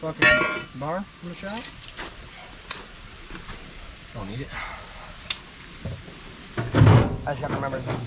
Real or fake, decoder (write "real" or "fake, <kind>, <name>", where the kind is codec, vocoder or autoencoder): real